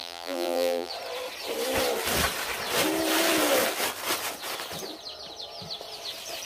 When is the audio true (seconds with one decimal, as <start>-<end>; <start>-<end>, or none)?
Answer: 0.9-6.5